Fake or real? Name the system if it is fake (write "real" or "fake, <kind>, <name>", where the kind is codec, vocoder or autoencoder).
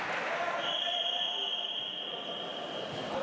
fake, vocoder, BigVGAN v2